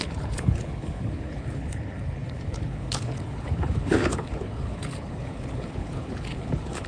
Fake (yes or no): yes